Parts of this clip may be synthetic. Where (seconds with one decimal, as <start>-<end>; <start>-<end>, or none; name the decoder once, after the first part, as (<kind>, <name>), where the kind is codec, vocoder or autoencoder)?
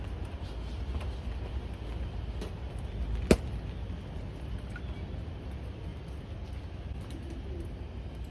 none